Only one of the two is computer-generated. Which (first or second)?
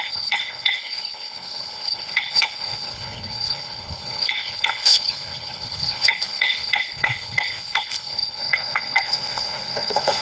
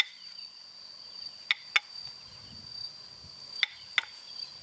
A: first